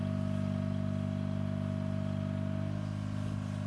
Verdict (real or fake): real